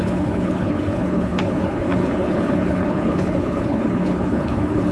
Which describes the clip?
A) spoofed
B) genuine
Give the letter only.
A